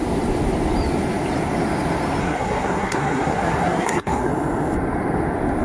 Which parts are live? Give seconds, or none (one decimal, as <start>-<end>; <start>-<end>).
0.0-2.2; 4.3-5.6